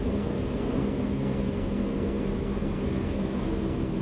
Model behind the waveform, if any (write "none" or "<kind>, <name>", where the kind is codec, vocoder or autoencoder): codec, SNAC